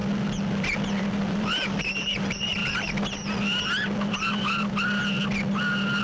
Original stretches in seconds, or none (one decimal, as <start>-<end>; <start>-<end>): 0.0-1.1; 2.6-6.0